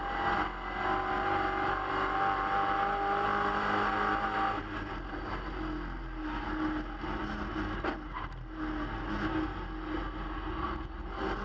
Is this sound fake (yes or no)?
no